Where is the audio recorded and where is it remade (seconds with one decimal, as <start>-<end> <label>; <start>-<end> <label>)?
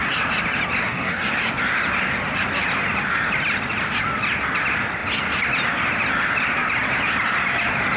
0.0-0.8 recorded; 0.8-1.3 remade; 1.3-8.0 recorded